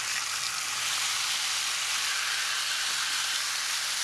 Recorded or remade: recorded